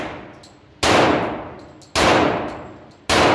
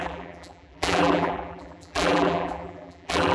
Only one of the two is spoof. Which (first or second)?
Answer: second